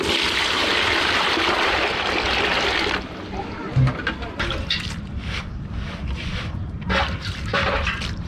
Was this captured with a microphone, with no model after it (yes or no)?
yes